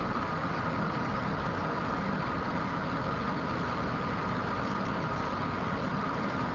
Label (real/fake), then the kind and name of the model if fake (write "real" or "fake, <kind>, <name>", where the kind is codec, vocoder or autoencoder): real